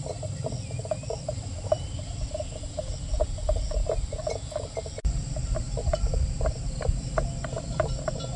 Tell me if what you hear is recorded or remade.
recorded